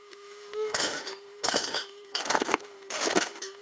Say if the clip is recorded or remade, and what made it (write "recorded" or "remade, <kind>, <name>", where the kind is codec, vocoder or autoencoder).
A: remade, autoencoder, DAC-VAE